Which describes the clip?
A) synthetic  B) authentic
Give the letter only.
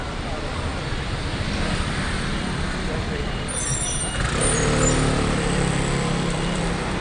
A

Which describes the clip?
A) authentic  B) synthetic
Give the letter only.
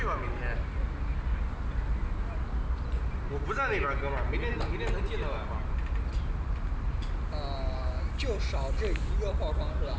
A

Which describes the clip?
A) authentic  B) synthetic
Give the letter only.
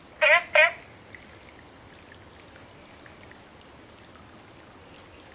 A